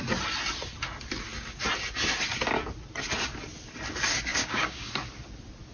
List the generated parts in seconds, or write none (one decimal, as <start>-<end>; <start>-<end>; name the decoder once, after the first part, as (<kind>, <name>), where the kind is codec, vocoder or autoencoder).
4.3-4.9 (codec, DAC)